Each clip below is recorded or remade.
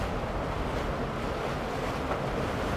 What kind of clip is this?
recorded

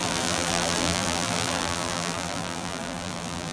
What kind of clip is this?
remade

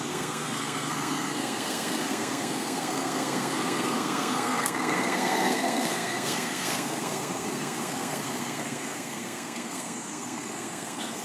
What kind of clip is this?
remade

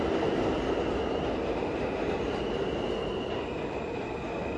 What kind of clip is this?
recorded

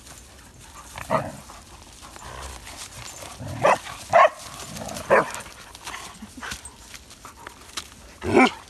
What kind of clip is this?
recorded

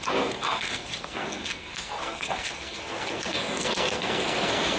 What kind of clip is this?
remade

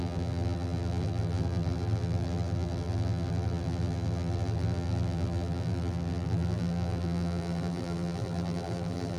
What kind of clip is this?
remade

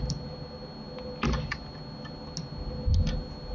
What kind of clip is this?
recorded